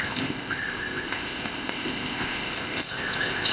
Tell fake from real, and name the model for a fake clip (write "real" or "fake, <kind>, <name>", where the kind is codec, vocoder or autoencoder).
fake, codec, ZipCodec